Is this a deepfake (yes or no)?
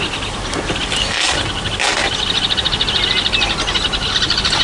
no